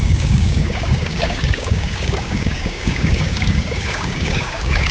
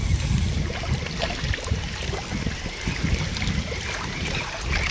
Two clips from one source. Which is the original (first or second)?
second